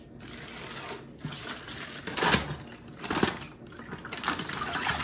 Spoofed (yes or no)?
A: no